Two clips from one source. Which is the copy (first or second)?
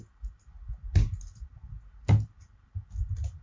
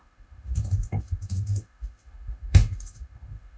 second